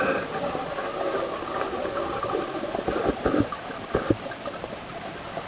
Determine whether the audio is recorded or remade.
recorded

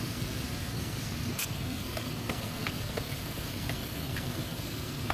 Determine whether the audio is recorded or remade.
remade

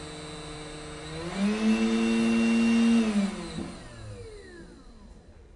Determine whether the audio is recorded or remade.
recorded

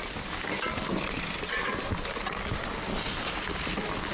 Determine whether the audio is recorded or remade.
recorded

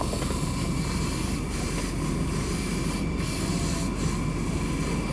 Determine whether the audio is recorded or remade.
recorded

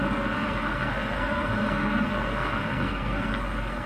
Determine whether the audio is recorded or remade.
remade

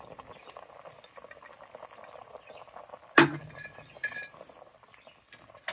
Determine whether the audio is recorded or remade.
recorded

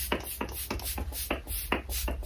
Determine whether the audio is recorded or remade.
recorded